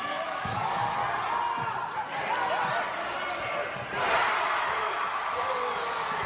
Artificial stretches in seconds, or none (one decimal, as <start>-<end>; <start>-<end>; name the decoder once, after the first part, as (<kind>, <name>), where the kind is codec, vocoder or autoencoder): 0.0-1.0 (autoencoder, DAC-VAE); 4.6-6.3